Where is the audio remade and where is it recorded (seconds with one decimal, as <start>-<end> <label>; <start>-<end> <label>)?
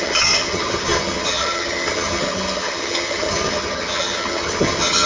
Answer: 0.0-5.1 remade